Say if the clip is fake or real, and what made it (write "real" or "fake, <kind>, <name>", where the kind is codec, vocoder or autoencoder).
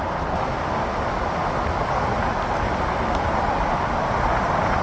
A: real